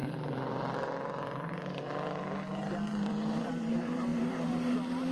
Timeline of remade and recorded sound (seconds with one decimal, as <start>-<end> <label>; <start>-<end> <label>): 0.0-3.1 recorded; 3.1-5.1 remade